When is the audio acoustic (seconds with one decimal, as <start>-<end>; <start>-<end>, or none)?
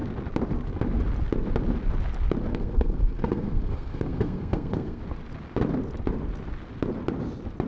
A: 0.0-2.5; 5.0-7.7